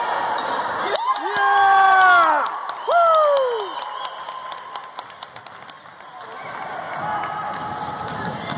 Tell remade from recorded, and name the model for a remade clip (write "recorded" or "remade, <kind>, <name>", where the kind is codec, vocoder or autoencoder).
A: recorded